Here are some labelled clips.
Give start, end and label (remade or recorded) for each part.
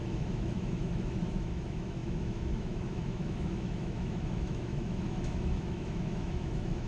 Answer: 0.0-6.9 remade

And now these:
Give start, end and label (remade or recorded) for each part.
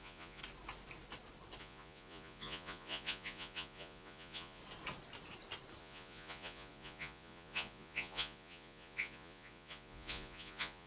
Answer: 0.0-0.4 remade; 0.4-1.6 recorded; 1.6-4.6 remade; 4.6-5.8 recorded; 5.8-10.9 remade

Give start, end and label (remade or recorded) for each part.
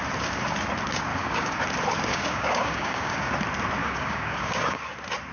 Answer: 0.0-1.1 recorded; 1.1-1.6 remade; 1.6-2.1 recorded; 2.1-3.3 remade; 3.3-3.8 recorded; 3.8-4.8 remade; 4.8-5.3 recorded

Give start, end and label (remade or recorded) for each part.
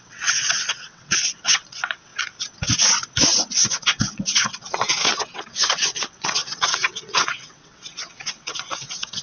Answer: 0.0-2.1 remade; 2.1-3.6 recorded; 3.6-9.2 remade